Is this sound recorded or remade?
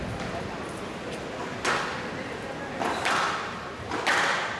recorded